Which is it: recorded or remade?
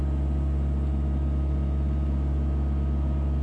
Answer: recorded